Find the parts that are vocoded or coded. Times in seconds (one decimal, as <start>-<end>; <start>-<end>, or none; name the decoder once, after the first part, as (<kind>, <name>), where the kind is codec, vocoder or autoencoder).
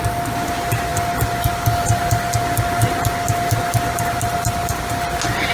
none